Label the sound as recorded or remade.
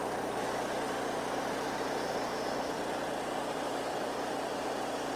recorded